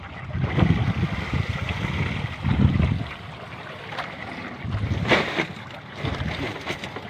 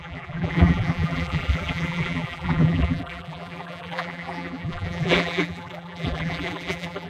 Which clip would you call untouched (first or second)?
first